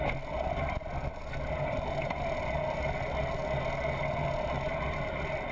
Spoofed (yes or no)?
no